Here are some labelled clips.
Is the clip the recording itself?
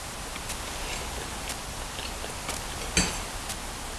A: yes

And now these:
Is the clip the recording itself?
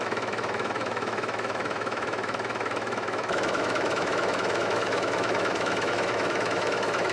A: no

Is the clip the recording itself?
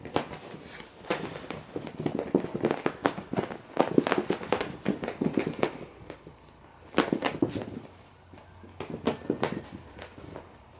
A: yes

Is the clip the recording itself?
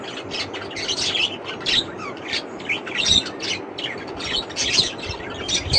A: yes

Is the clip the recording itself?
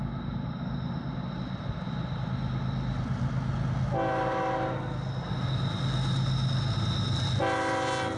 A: yes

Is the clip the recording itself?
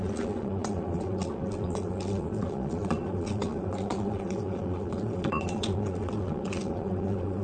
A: no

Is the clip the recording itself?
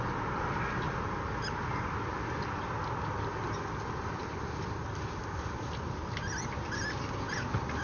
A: yes